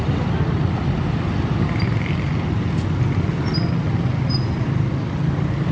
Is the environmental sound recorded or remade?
recorded